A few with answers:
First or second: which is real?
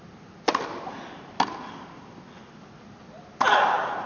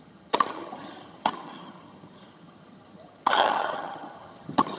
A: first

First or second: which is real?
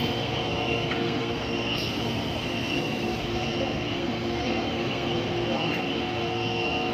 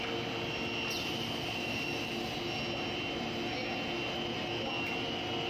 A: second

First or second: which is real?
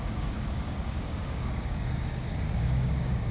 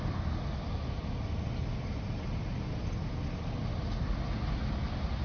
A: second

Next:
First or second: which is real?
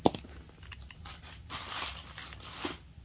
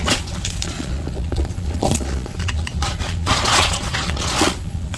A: first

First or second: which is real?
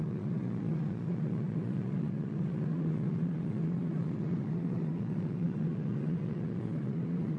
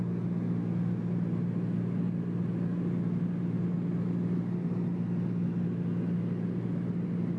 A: second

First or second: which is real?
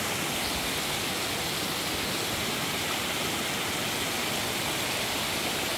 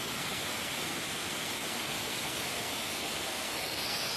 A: first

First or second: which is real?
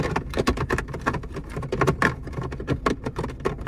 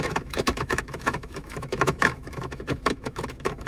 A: first